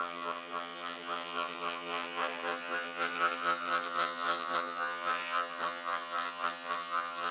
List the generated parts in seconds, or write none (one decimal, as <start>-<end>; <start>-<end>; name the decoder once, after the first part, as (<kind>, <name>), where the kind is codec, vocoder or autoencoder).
0.0-7.3 (vocoder, HiFi-GAN)

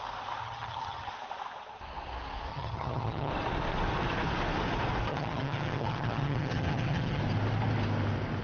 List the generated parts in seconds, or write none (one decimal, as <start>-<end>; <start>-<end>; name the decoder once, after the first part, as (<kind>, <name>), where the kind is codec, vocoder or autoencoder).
0.4-1.1 (vocoder, HiFi-GAN); 2.5-3.3; 5.1-7.2

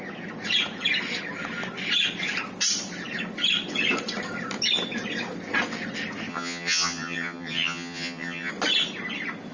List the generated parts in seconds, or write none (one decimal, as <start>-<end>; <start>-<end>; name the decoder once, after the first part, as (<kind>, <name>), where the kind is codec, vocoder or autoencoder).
6.3-8.5 (vocoder, HiFi-GAN)

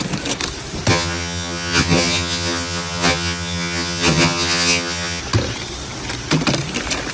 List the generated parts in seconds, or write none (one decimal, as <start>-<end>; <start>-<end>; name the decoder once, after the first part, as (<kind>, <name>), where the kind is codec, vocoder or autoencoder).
0.9-5.2 (vocoder, HiFi-GAN)

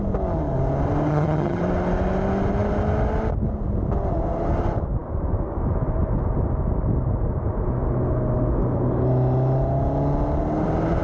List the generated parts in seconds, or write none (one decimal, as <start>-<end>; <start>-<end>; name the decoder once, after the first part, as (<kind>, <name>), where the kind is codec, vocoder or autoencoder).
1.1-1.6 (vocoder, HiFi-GAN)

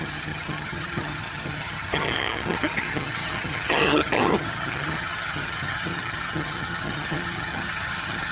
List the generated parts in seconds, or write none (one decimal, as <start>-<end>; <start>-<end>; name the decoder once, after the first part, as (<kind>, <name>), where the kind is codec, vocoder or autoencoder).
0.0-8.3 (vocoder, HiFi-GAN)